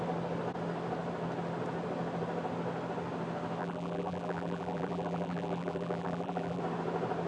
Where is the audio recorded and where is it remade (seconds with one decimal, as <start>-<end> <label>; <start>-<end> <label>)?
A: 0.0-3.6 recorded; 3.6-6.6 remade; 6.6-7.3 recorded